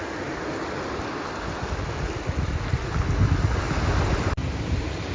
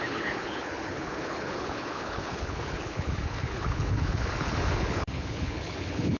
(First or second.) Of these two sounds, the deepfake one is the second